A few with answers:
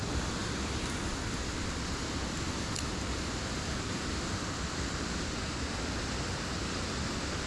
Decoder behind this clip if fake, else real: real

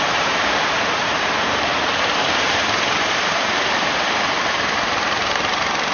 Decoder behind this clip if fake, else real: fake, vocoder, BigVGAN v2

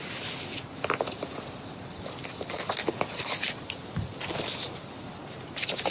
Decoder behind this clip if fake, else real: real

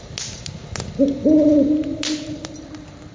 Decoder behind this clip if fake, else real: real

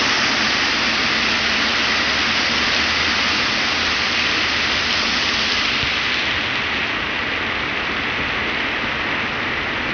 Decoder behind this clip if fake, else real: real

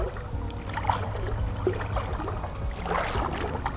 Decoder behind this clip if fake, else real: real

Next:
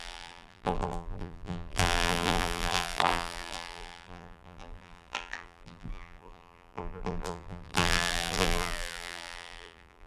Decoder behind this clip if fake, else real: fake, vocoder, BigVGAN v2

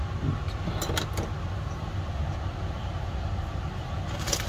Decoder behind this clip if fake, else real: real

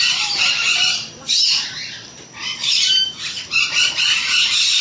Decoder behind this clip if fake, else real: fake, vocoder, BigVGAN v2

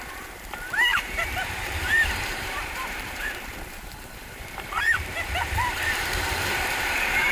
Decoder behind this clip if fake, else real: fake, vocoder, BigVGAN v2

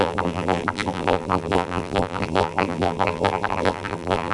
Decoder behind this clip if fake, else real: fake, vocoder, BigVGAN v2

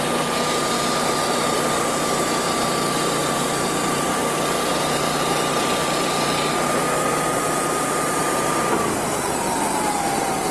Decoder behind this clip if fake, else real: fake, vocoder, BigVGAN v2